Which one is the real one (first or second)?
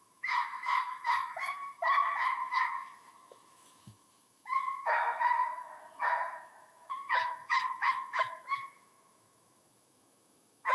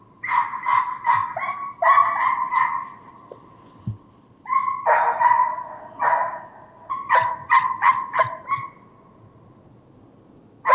second